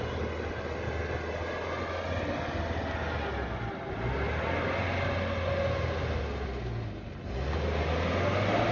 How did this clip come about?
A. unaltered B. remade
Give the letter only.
A